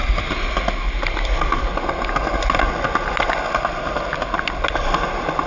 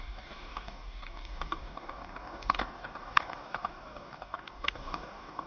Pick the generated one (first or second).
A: second